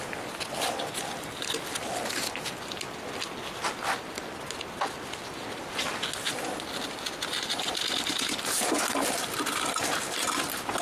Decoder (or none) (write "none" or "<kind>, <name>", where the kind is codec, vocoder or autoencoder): none